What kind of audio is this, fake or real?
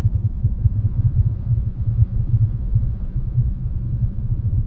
fake